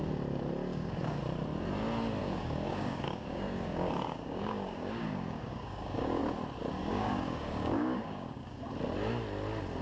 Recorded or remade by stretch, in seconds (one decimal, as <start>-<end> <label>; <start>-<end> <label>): 0.0-0.7 recorded; 0.7-1.2 remade; 1.2-2.2 recorded; 2.2-6.2 remade; 6.2-6.8 recorded; 6.8-8.6 remade; 8.6-9.8 recorded